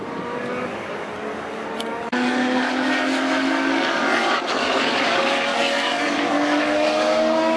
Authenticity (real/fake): fake